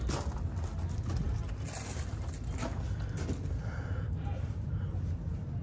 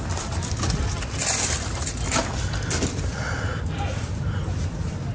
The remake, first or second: second